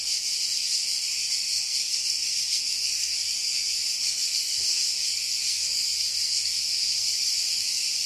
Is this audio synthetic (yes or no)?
yes